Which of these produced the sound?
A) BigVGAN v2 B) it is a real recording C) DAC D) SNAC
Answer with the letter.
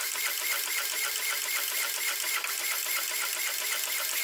B